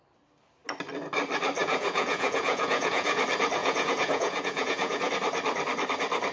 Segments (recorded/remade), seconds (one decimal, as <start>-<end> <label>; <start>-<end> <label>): 0.0-1.6 recorded; 1.6-3.2 remade; 3.2-3.6 recorded; 3.6-5.1 remade; 5.1-6.3 recorded